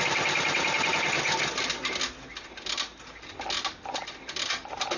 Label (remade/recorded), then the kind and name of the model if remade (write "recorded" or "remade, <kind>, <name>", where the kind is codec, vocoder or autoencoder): recorded